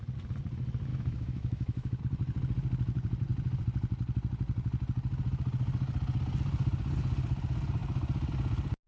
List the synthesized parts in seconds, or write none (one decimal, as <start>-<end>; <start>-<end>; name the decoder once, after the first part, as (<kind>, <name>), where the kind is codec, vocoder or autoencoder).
0.9-2.0 (autoencoder, DAC-VAE)